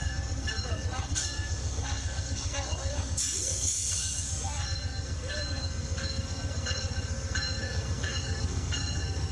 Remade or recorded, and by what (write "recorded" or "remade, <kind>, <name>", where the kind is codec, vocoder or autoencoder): remade, codec, SNAC